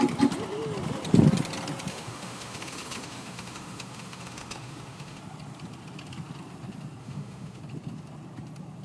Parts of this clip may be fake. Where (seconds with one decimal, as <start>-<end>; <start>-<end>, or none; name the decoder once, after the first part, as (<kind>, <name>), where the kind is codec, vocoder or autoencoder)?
1.9-5.2 (autoencoder, DAC-VAE); 7.0-7.6